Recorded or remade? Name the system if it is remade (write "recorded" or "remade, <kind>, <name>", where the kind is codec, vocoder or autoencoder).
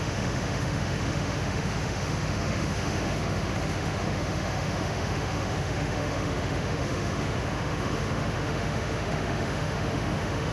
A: remade, autoencoder, DAC-VAE